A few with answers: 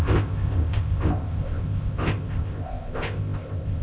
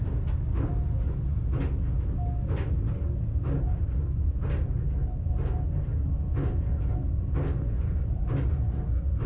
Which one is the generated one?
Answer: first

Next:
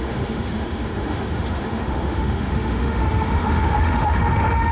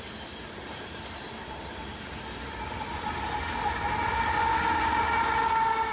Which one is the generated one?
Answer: first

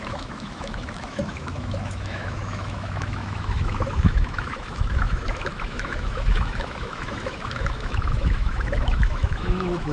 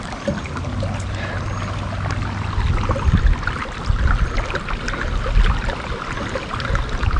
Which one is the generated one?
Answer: first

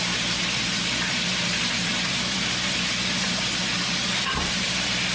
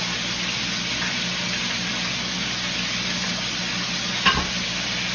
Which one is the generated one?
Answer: first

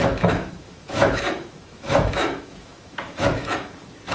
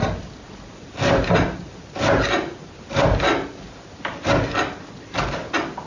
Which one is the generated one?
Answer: first